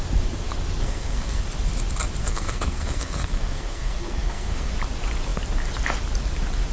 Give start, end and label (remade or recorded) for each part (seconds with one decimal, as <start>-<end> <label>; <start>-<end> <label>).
0.0-0.8 recorded; 0.8-1.4 remade; 1.4-2.2 recorded; 2.2-4.7 remade; 4.7-6.7 recorded